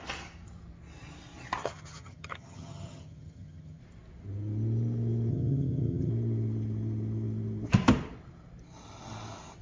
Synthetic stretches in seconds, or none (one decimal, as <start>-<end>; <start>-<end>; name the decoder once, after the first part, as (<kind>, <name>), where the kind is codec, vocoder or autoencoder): 1.6-3.8 (vocoder, HiFi-GAN); 5.3-6.1